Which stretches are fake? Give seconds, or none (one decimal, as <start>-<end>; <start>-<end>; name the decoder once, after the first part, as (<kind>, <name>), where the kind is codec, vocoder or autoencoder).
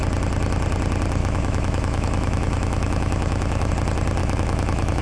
1.2-3.7 (autoencoder, DAC-VAE); 4.2-5.0